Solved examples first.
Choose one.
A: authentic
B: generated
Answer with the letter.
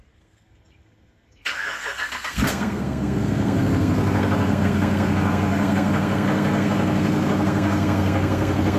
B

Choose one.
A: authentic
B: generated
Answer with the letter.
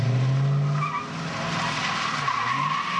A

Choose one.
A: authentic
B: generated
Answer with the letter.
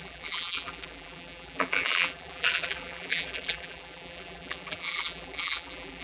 B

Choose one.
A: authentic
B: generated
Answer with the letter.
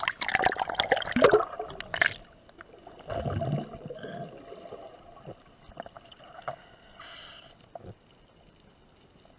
A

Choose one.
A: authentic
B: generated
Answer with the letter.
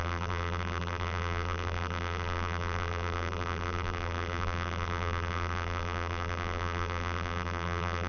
B